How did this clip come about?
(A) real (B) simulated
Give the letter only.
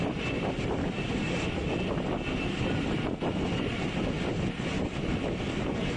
A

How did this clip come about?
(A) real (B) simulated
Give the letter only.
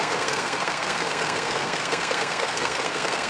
B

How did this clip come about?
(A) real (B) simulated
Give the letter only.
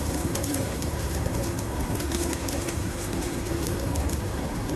B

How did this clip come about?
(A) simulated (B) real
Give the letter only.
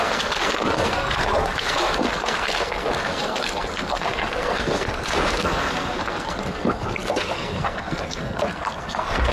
A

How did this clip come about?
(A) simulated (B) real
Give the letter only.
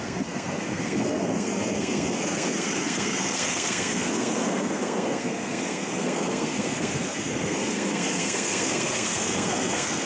A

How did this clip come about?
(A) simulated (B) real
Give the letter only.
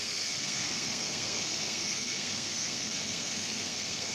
A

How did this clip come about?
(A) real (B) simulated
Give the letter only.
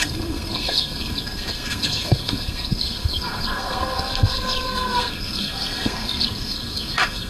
B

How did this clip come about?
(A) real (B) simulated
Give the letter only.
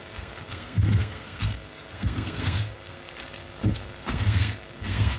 B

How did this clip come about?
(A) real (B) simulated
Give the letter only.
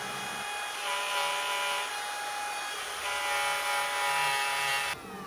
A